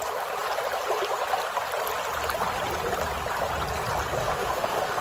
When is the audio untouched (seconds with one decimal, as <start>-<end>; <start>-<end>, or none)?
0.0-4.2

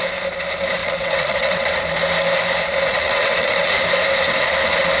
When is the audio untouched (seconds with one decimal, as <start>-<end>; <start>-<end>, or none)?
0.0-0.8; 1.8-2.9; 3.7-5.0

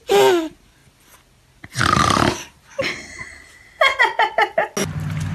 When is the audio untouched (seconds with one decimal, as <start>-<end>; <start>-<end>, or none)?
0.0-5.3

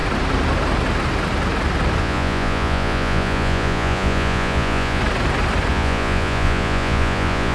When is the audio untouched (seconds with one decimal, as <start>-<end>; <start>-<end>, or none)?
0.0-2.0; 5.0-5.7

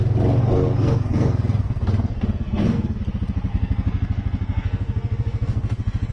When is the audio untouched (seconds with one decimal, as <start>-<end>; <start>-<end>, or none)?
0.0-0.4; 3.0-3.5

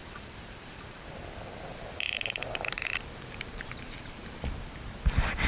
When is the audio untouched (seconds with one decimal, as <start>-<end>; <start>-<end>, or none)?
1.0-1.7; 4.6-5.5

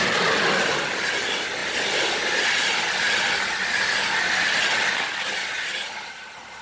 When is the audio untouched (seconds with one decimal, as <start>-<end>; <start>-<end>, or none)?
0.0-6.6